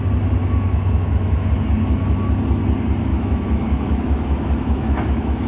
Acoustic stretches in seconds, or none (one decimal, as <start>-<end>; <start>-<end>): 0.0-0.4; 1.5-3.1